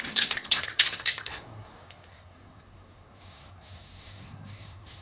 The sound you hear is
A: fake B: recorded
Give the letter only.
A